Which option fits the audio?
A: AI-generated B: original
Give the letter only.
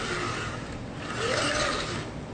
B